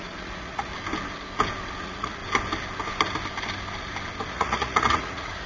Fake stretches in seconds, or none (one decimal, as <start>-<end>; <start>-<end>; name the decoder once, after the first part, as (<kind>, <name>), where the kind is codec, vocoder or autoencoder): 0.0-0.7 (vocoder, Vocos); 1.8-2.2; 4.3-5.5